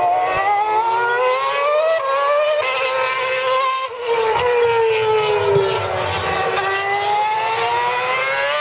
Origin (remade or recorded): recorded